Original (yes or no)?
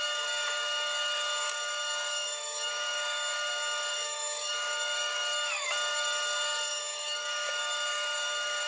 no